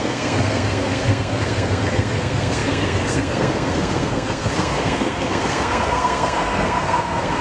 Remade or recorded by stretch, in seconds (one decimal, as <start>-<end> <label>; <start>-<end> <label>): 0.0-7.4 remade